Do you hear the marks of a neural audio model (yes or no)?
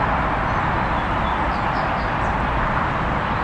no